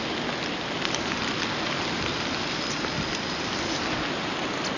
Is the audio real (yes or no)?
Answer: yes